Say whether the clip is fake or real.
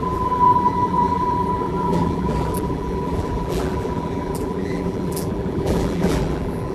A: fake